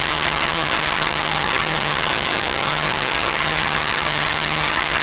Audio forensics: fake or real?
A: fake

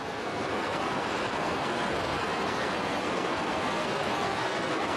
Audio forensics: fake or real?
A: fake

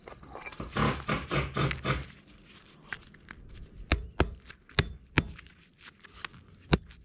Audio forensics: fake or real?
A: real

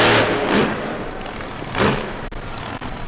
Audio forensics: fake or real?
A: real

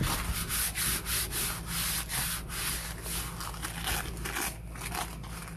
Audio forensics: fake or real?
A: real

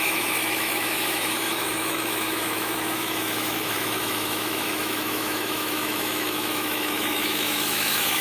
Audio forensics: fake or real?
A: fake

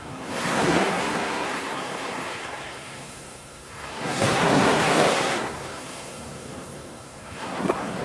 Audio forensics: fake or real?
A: fake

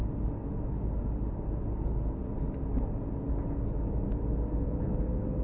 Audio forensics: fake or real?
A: real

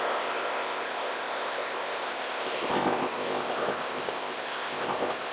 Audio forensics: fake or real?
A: fake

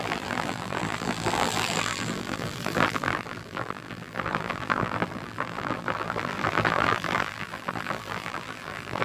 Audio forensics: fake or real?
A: fake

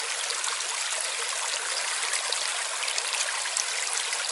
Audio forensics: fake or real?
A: real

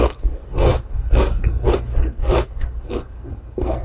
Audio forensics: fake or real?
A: fake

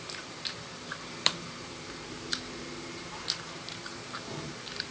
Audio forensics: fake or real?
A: fake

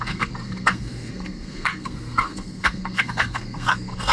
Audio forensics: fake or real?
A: fake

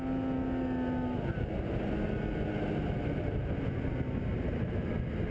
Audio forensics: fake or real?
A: real